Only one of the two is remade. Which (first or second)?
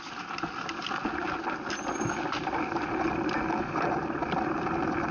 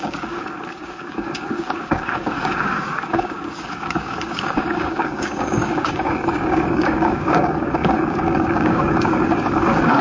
second